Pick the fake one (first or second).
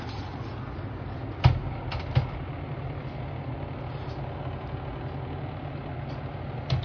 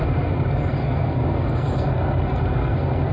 second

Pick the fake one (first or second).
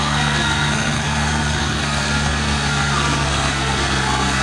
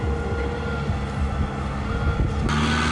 first